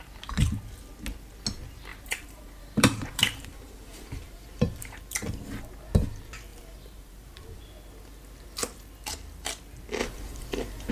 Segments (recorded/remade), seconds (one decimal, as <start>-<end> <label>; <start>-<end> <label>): 0.0-1.9 recorded; 1.9-5.0 remade; 5.0-6.5 recorded; 6.5-7.6 remade; 7.6-10.0 recorded; 10.0-10.9 remade